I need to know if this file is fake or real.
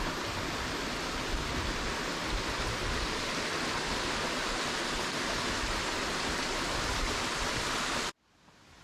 real